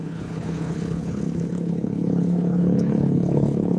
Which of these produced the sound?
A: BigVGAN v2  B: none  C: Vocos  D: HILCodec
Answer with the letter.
D